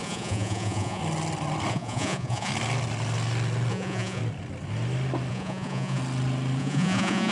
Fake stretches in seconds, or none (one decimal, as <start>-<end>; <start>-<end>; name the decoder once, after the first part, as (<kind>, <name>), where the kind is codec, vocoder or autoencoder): 0.0-1.0 (vocoder, Vocos); 1.7-2.5; 3.7-4.2; 5.3-6.0; 6.6-7.3